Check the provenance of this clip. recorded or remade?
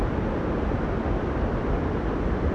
recorded